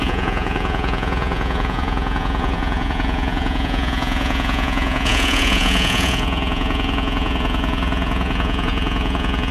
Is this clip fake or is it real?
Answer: fake